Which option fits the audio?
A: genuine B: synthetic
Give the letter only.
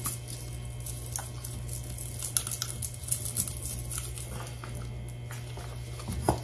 A